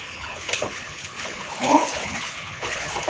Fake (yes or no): yes